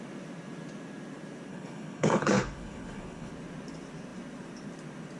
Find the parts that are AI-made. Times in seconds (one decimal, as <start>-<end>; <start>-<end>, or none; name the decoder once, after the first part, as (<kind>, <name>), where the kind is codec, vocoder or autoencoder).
1.5-3.3 (codec, HILCodec)